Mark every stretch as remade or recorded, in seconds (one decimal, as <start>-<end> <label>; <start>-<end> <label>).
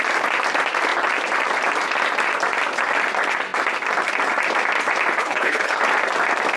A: 0.0-5.2 recorded; 5.2-5.8 remade; 5.8-6.6 recorded